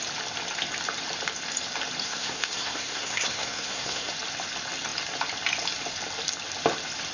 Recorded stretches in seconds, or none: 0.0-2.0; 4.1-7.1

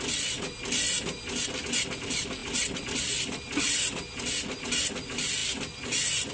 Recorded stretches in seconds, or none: 0.0-6.3

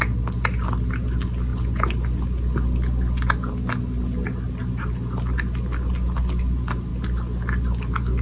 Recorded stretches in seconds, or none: 0.0-8.2

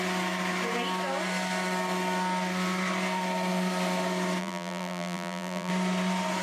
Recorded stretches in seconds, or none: 0.0-4.4; 5.7-6.4